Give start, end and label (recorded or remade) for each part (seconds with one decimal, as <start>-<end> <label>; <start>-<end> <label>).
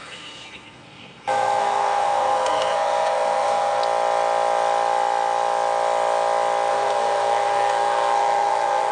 0.0-3.8 remade; 3.8-6.7 recorded; 6.7-8.9 remade